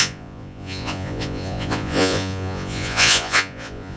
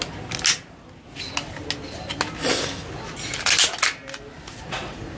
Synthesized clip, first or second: first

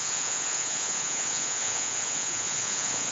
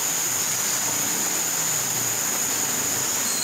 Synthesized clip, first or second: first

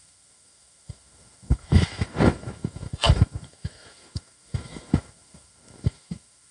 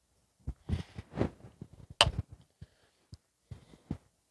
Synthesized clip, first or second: first